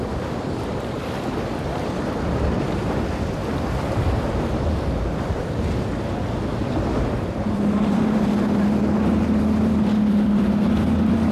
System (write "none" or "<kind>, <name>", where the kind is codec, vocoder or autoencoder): vocoder, BigVGAN v2